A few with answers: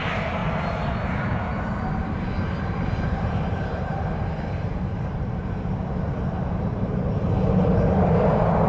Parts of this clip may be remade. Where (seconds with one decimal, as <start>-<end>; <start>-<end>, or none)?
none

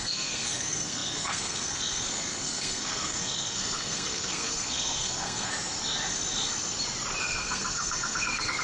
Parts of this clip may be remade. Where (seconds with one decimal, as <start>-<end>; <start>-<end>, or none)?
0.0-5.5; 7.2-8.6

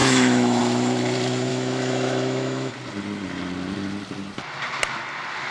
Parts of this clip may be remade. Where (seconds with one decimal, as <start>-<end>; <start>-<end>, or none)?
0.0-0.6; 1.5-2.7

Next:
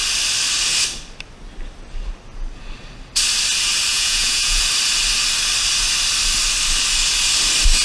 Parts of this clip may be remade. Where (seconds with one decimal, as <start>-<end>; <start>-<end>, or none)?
3.9-4.6